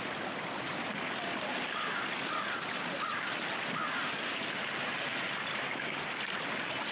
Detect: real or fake real